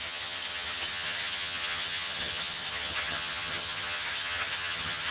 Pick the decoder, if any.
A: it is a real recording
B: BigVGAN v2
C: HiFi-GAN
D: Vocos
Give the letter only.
C